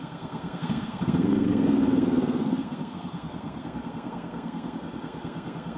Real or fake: fake